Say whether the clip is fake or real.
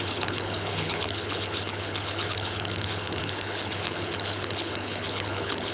fake